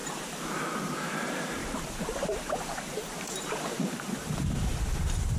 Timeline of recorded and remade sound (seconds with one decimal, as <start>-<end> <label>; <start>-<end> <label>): 0.0-0.6 remade; 0.6-1.6 recorded; 1.6-4.8 remade; 4.8-5.4 recorded